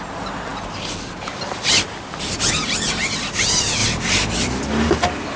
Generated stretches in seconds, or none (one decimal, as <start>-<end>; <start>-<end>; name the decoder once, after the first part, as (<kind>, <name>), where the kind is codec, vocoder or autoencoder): none